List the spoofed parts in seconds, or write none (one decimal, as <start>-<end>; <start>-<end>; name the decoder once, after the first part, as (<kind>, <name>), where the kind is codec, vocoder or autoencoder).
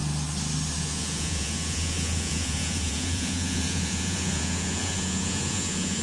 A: 0.8-6.0 (vocoder, Vocos)